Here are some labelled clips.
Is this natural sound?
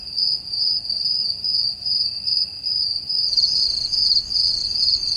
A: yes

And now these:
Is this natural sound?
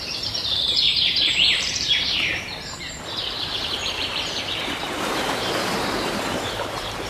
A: no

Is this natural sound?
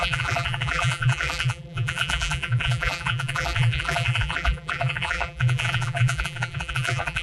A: no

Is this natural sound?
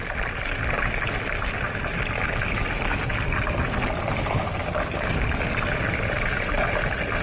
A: yes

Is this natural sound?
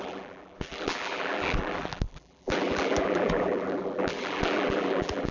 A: no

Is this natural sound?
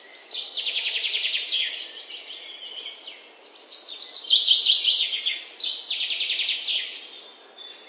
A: yes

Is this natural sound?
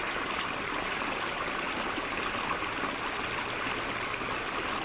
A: yes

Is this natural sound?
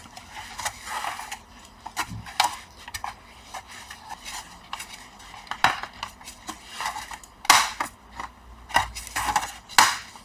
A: yes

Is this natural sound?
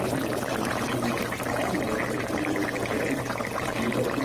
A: no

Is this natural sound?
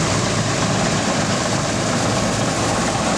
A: no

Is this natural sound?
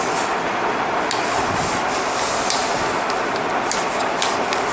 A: yes